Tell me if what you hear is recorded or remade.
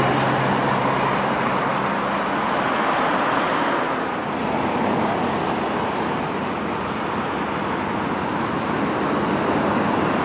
recorded